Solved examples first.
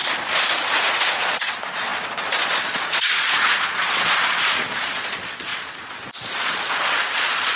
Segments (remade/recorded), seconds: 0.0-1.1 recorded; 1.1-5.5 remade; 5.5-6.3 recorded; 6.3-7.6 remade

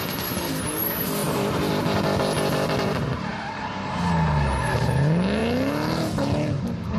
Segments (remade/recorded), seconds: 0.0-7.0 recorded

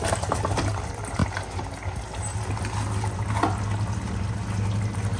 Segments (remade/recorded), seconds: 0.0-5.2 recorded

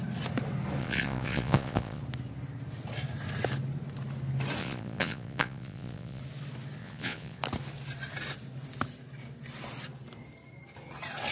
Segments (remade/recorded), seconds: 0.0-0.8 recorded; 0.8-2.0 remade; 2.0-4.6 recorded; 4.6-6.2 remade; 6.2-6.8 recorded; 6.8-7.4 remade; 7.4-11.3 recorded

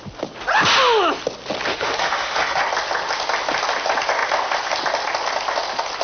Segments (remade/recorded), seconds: 0.0-1.7 recorded; 1.7-2.6 remade; 2.6-6.0 recorded

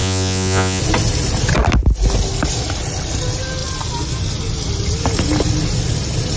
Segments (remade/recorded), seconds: 0.0-0.8 remade; 0.8-6.4 recorded

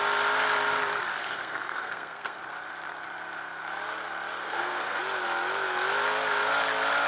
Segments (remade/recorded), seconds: 0.0-1.2 recorded; 1.2-2.4 remade; 2.4-4.4 recorded; 4.4-5.0 remade; 5.0-7.1 recorded

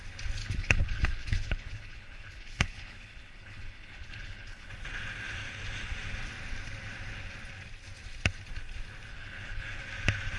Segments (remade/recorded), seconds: 0.0-0.4 recorded; 0.4-4.7 remade; 4.7-9.1 recorded; 9.1-9.8 remade; 9.8-10.4 recorded